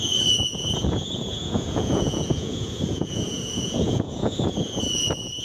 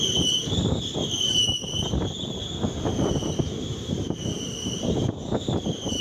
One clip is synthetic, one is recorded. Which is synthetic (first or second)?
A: first